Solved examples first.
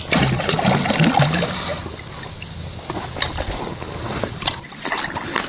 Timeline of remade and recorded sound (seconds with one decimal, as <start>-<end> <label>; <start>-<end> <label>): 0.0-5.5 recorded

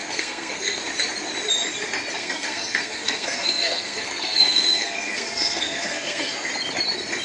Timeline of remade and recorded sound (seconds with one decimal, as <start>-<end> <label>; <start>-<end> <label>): 0.0-0.8 remade; 0.8-2.2 recorded; 2.2-6.5 remade; 6.5-7.2 recorded

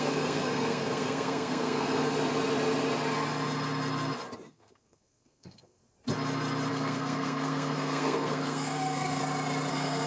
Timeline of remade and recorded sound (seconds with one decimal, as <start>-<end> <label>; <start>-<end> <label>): 0.0-2.1 remade; 2.1-4.5 recorded; 4.5-5.8 remade; 5.8-6.7 recorded; 6.7-9.2 remade; 9.2-9.7 recorded; 9.7-10.1 remade

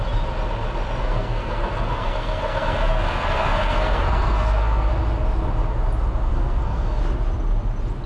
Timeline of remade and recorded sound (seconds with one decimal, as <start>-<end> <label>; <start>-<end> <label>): 0.0-1.0 recorded; 1.0-4.9 remade; 4.9-6.3 recorded; 6.3-7.0 remade; 7.0-8.1 recorded

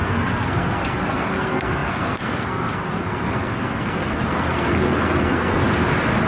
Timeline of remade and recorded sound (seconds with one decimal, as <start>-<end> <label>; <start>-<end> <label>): 0.0-5.6 remade; 5.6-6.3 recorded

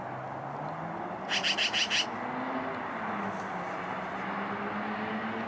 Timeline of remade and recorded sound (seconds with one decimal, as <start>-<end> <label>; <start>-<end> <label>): 0.0-5.5 recorded